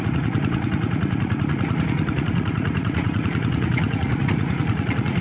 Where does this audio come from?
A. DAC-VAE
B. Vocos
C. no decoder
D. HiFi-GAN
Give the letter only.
B